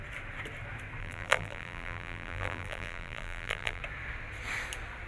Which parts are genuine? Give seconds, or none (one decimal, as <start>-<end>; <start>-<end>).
0.0-1.0; 3.8-5.1